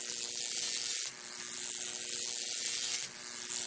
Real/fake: real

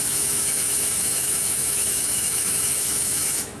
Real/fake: fake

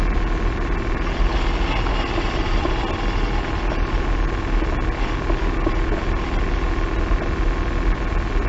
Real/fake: real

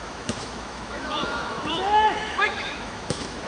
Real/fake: fake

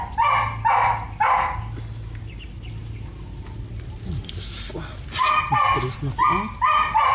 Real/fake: real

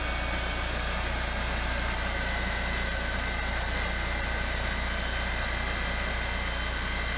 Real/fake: real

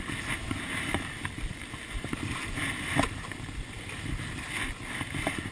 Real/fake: real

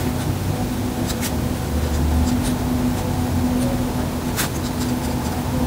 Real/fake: real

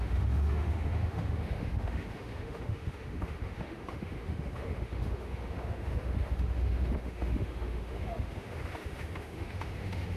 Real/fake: fake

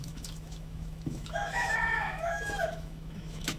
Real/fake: fake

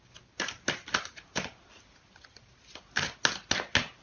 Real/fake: real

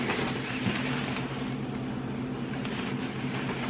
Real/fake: real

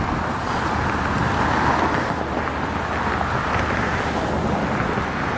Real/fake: real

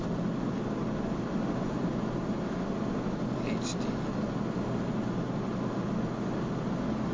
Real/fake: real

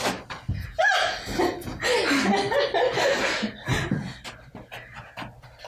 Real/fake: real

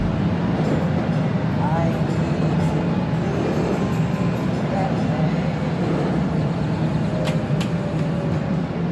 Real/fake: real